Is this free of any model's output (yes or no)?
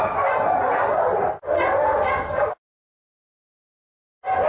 yes